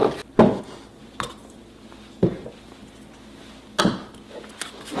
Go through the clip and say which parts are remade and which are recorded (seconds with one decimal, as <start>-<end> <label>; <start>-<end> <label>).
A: 0.0-5.0 recorded